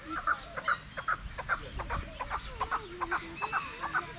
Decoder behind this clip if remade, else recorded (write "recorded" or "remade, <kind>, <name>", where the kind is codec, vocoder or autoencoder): recorded